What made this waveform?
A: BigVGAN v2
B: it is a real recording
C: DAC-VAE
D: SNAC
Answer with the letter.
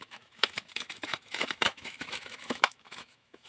C